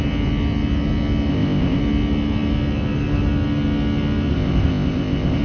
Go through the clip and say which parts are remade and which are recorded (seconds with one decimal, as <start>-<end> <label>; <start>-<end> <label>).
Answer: 0.0-1.3 recorded; 1.3-1.8 remade; 1.8-4.3 recorded; 4.3-5.4 remade